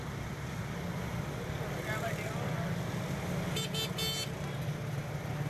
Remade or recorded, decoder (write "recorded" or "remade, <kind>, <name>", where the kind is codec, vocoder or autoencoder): recorded